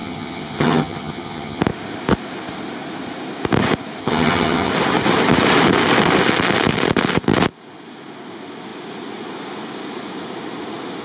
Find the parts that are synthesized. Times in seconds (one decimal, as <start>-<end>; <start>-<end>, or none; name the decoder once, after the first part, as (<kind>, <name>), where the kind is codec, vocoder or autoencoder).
0.0-1.6 (vocoder, HiFi-GAN); 4.0-4.7

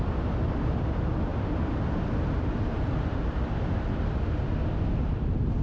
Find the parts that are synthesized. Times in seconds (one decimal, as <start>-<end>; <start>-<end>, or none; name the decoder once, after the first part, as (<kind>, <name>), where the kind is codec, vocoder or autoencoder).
none

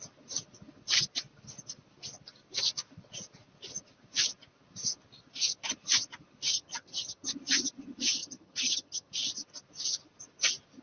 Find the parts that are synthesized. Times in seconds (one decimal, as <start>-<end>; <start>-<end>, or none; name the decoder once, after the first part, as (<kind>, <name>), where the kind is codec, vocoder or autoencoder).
6.5-7.3 (vocoder, HiFi-GAN); 8.2-9.1

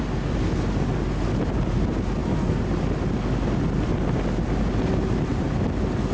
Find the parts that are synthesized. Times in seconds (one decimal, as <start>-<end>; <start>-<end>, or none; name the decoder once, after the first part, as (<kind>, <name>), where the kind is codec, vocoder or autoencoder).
none